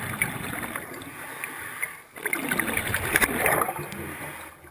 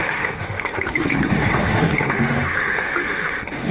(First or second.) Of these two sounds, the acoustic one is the first